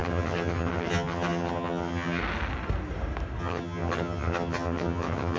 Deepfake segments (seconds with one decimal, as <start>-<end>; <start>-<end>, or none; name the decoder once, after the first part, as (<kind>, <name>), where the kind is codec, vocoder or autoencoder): 0.0-2.2 (vocoder, HiFi-GAN); 3.4-5.4